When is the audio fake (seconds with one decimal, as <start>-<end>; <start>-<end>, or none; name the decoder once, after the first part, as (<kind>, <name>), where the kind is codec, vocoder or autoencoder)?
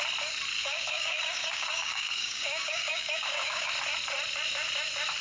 0.6-3.7 (codec, DAC)